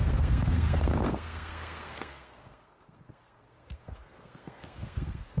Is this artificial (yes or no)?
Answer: yes